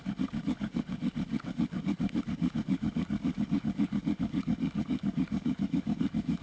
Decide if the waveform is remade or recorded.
remade